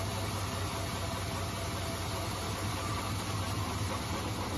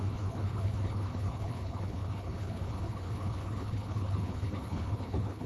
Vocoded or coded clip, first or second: second